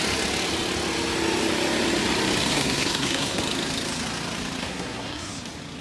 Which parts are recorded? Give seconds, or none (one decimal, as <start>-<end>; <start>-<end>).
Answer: 0.0-2.5; 3.4-4.6; 5.3-5.8